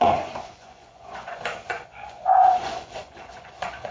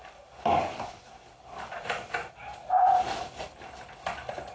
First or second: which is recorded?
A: second